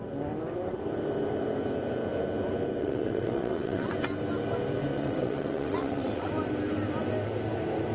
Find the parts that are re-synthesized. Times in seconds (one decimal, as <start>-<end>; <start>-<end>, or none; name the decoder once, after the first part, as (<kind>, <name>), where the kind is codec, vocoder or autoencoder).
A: 2.8-3.9 (vocoder, WaveNeXt); 4.9-6.3